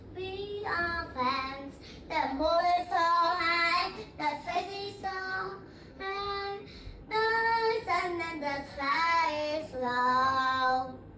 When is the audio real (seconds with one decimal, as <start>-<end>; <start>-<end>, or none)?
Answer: 0.0-2.3; 3.4-3.8; 7.3-8.7